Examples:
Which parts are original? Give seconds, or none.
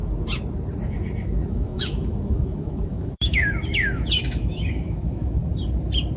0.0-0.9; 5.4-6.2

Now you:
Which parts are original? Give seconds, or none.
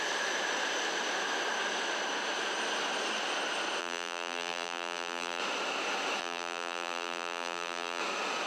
0.0-3.8; 5.4-6.2; 8.0-8.5